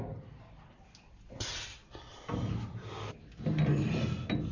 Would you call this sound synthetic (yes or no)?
no